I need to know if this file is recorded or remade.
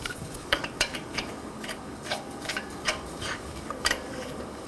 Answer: remade